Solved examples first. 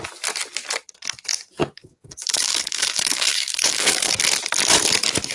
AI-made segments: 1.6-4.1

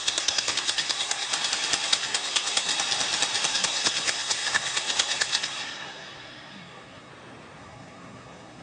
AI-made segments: 0.0-1.3; 1.9-2.7; 3.5-7.1; 7.6-8.6

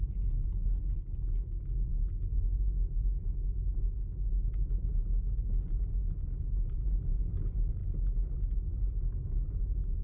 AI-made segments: none